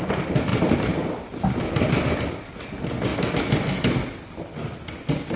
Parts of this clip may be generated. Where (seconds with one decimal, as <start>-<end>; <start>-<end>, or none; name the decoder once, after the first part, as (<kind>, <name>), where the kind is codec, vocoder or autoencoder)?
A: none